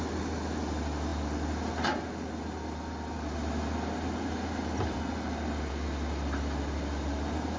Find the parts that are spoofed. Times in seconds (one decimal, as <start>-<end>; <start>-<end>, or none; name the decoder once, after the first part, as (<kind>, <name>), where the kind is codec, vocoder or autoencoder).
none